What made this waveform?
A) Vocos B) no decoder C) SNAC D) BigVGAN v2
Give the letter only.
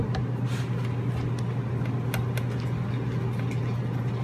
B